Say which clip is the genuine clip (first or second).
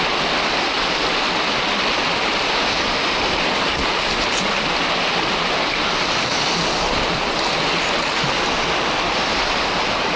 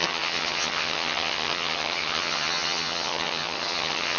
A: first